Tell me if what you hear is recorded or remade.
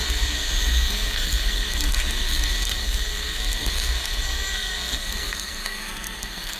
remade